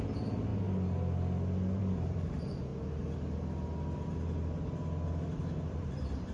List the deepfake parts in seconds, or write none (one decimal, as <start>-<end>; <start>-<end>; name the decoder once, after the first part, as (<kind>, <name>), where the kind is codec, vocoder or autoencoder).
0.0-0.5 (vocoder, BigVGAN v2); 1.8-2.7; 5.7-6.3